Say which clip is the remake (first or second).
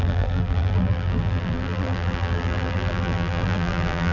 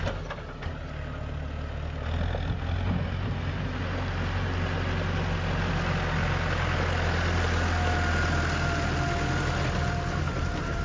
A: first